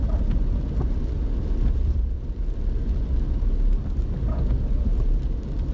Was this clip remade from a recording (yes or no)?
yes